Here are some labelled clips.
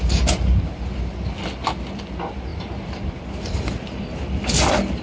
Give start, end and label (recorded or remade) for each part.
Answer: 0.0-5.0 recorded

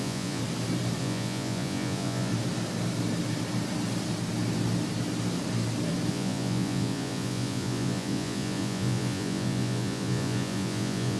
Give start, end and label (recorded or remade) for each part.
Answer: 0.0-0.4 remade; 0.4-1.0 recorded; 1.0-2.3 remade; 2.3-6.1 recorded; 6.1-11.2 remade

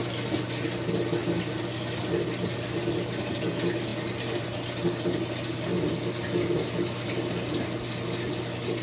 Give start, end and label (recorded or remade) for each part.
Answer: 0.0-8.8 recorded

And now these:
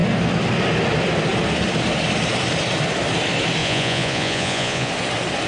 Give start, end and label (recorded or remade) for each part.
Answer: 0.0-3.6 recorded; 3.6-4.9 remade; 4.9-5.5 recorded